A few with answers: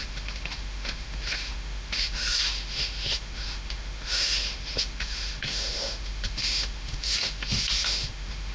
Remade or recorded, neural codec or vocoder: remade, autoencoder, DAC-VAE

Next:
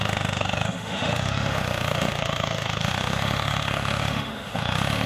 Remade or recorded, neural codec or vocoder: remade, autoencoder, DAC-VAE